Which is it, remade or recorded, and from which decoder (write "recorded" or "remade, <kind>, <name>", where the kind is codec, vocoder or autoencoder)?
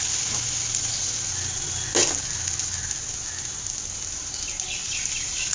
recorded